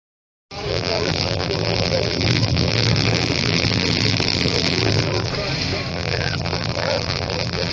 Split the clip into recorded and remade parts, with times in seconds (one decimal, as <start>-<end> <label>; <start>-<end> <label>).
0.0-0.7 recorded; 0.7-5.3 remade; 5.3-5.9 recorded; 5.9-7.7 remade